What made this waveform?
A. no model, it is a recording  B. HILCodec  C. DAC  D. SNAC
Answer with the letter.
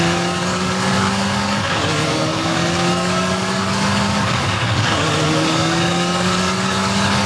C